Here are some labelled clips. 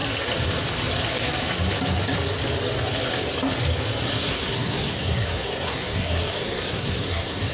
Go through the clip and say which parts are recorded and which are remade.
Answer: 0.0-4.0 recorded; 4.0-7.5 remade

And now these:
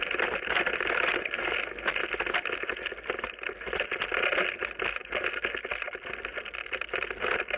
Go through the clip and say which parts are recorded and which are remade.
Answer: 0.0-7.6 recorded

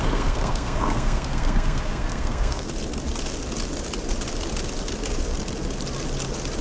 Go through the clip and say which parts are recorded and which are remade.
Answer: 0.0-2.7 remade; 2.7-6.6 recorded

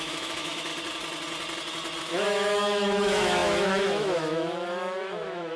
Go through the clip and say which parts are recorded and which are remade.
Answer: 0.0-0.7 remade; 0.7-2.0 recorded; 2.0-5.6 remade

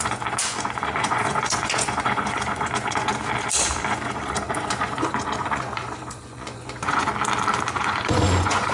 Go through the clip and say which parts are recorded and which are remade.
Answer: 0.0-3.1 remade; 3.1-3.9 recorded; 3.9-7.1 remade; 7.1-7.8 recorded; 7.8-8.7 remade

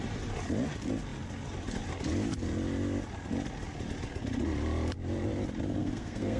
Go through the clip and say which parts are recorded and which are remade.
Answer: 0.0-5.8 recorded; 5.8-6.4 remade

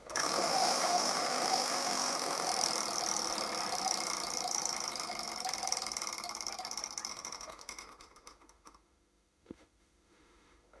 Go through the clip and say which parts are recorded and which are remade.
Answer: 0.0-2.5 remade; 2.5-7.1 recorded; 7.1-10.8 remade

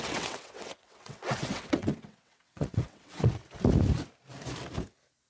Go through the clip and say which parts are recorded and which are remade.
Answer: 0.0-3.4 remade; 3.4-5.3 recorded